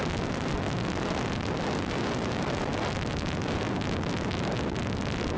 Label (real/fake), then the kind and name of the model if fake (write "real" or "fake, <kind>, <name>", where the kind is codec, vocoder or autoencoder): real